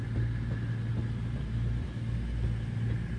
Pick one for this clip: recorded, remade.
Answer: recorded